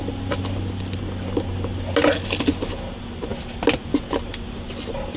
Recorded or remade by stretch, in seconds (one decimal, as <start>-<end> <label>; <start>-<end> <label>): 0.0-5.2 recorded